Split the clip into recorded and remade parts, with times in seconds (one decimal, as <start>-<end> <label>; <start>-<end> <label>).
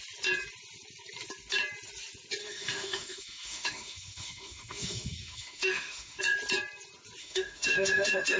0.0-2.4 recorded; 2.4-6.2 remade; 6.2-7.2 recorded; 7.2-8.4 remade